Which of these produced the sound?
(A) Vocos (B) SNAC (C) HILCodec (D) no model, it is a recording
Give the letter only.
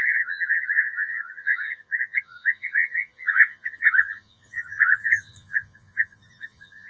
A